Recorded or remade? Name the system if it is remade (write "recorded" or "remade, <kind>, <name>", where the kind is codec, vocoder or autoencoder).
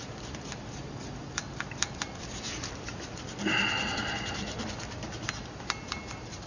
recorded